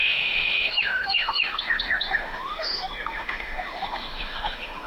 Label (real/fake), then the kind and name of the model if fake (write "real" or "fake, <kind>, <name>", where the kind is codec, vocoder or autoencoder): fake, autoencoder, DAC-VAE